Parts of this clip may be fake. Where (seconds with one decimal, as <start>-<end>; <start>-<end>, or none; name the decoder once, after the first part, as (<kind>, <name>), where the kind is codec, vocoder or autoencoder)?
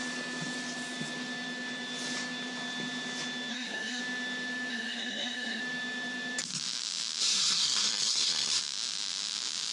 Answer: 3.5-4.0 (codec, SNAC); 4.7-5.6; 7.2-8.6